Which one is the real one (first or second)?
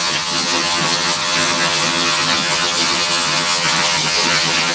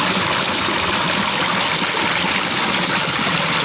second